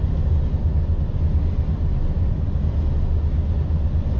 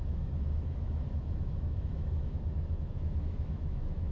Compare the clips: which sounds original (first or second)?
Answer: first